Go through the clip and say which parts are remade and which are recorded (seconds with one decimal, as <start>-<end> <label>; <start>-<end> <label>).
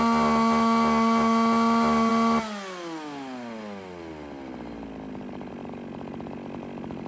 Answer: 0.0-7.1 recorded